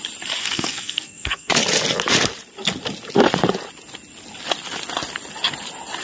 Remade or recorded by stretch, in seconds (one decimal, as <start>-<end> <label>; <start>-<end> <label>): 0.0-0.4 recorded; 0.4-1.5 remade; 1.5-6.0 recorded

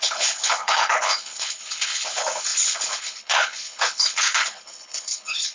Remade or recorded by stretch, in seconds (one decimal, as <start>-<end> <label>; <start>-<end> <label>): 0.0-5.5 remade

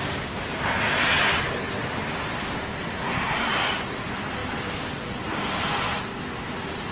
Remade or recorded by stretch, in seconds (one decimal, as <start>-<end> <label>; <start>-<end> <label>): 0.0-3.0 recorded; 3.0-3.5 remade; 3.5-6.9 recorded

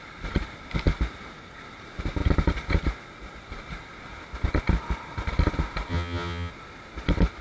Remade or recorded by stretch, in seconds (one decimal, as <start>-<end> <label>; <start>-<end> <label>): 0.0-5.9 recorded; 5.9-6.5 remade; 6.5-7.4 recorded

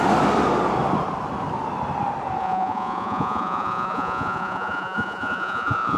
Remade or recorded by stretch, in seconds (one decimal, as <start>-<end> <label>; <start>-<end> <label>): 0.0-2.4 recorded; 2.4-6.0 remade

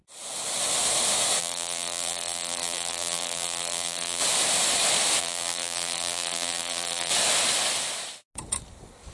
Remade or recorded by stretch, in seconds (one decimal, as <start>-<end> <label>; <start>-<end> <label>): 0.0-1.4 recorded; 1.4-4.2 remade; 4.2-5.2 recorded; 5.2-7.1 remade; 7.1-9.1 recorded

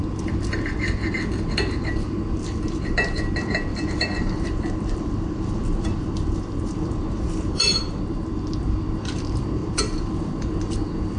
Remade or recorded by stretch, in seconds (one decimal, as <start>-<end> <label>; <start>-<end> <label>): 0.0-3.7 recorded; 3.7-8.0 remade; 8.0-9.6 recorded; 9.6-10.3 remade; 10.3-11.2 recorded